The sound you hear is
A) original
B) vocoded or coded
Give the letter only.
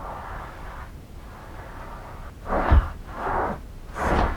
A